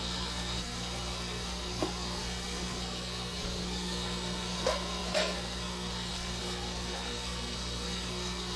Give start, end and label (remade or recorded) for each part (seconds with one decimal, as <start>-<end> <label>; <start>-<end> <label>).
0.0-8.6 remade